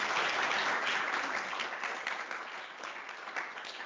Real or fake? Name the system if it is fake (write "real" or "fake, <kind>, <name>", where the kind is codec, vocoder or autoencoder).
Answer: real